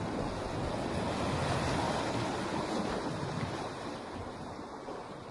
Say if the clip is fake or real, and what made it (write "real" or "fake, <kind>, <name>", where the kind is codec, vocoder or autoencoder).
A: real